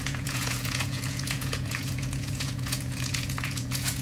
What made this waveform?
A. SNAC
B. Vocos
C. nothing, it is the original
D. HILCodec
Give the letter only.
B